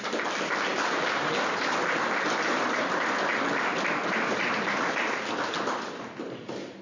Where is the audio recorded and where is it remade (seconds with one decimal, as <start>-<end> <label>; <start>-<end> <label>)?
0.0-6.8 remade